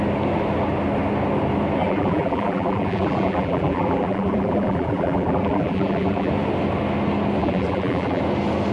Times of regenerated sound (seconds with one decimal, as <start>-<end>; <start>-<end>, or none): 1.8-6.3; 7.4-8.2